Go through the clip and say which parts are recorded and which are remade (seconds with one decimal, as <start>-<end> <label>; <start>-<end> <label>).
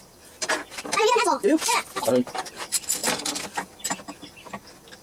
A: 0.0-5.0 remade